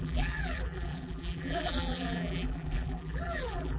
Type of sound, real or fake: fake